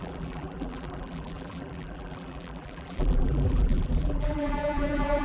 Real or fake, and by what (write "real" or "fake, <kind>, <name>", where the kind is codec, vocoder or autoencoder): fake, vocoder, BigVGAN v2